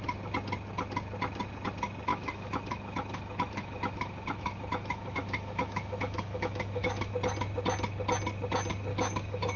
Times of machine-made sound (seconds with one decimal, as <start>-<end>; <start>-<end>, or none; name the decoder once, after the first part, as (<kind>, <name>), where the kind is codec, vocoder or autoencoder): 2.1-7.1 (autoencoder, DAC-VAE); 8.9-9.6